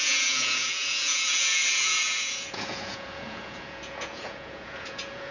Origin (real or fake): fake